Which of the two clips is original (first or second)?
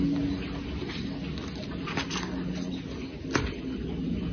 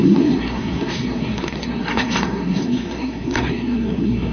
first